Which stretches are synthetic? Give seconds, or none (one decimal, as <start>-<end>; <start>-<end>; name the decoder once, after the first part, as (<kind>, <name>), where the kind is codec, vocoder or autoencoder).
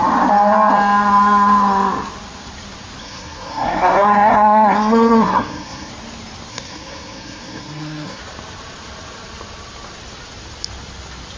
3.0-5.9 (codec, SNAC); 6.5-8.2